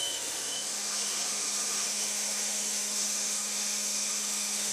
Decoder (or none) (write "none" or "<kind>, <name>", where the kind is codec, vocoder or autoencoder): autoencoder, DAC-VAE